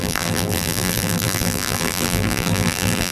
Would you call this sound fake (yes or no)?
yes